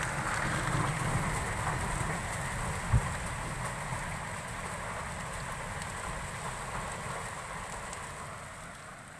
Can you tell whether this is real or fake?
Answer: real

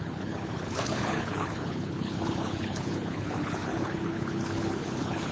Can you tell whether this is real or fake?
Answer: fake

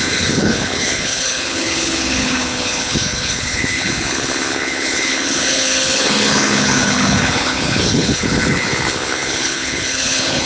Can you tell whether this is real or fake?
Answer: fake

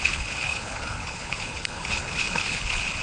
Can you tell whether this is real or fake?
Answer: fake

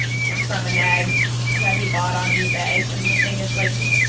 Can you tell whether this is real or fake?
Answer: real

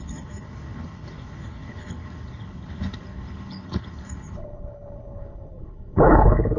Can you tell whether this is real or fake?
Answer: fake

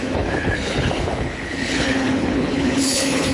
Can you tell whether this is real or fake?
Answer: fake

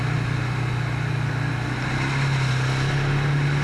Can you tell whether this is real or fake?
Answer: real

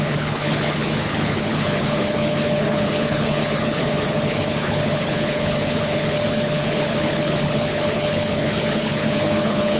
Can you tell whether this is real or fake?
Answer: fake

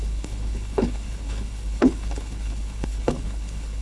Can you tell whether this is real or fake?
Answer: fake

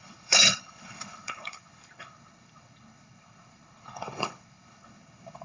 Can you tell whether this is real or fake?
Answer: fake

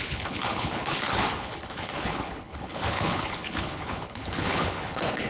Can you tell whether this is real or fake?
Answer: fake